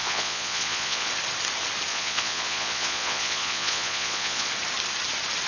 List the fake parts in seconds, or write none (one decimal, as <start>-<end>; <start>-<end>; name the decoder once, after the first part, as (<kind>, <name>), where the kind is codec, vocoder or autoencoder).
0.0-1.1 (vocoder, Vocos); 1.9-4.5